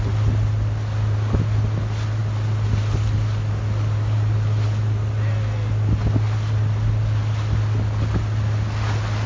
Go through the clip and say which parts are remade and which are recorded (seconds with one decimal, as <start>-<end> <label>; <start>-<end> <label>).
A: 0.0-9.3 recorded